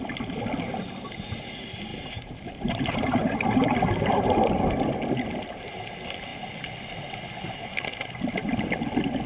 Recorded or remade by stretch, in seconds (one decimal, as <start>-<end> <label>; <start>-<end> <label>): 0.0-1.9 recorded; 1.9-4.6 remade; 4.6-9.3 recorded